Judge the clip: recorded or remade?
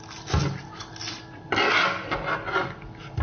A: recorded